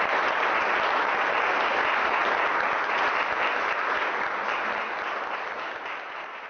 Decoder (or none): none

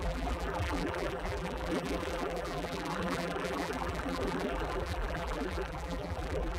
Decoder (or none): vocoder, BigVGAN v2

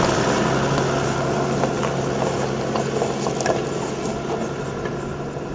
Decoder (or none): none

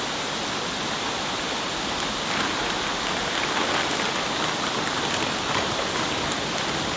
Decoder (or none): none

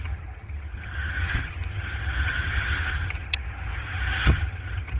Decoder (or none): vocoder, HiFi-GAN